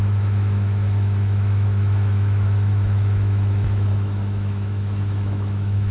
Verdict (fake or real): fake